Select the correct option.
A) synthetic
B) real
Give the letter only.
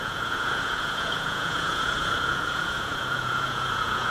A